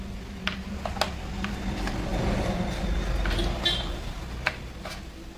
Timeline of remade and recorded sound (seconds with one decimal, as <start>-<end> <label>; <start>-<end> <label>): 0.0-5.4 recorded